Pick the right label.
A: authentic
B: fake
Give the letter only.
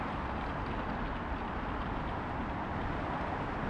A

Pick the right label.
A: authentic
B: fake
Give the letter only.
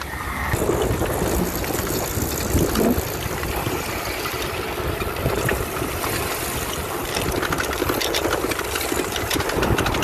A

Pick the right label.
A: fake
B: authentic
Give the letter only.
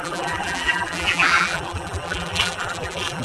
A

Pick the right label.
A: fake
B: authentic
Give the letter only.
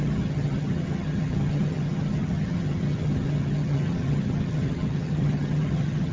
A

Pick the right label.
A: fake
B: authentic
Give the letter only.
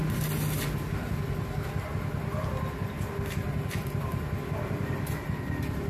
B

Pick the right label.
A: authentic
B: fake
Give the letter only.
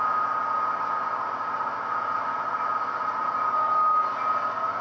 A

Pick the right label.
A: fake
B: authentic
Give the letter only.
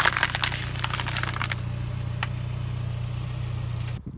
B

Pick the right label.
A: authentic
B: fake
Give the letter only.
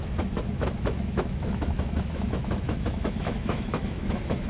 B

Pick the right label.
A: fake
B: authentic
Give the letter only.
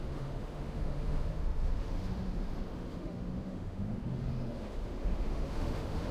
A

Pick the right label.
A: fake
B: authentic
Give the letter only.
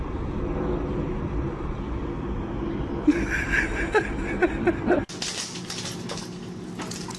B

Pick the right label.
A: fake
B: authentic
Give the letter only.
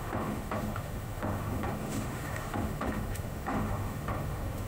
A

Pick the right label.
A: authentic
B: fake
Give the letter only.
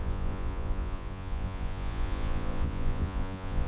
B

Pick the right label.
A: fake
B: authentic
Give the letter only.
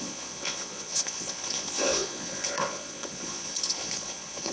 A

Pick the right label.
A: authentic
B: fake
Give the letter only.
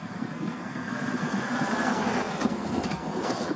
B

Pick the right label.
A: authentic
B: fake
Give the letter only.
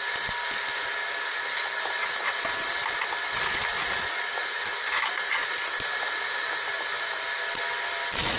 A